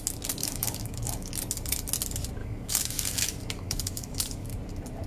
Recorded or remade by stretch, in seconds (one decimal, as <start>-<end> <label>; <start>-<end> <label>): 0.0-0.4 recorded; 0.4-1.3 remade; 1.3-2.4 recorded; 2.4-4.5 remade; 4.5-5.1 recorded